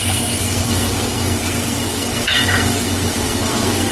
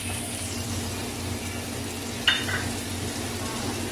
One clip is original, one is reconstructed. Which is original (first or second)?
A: second